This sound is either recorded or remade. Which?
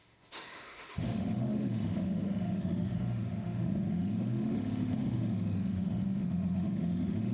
remade